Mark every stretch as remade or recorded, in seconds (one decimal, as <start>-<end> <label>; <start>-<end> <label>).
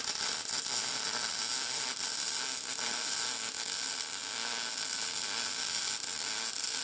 0.0-4.2 remade; 4.2-4.8 recorded; 4.8-6.8 remade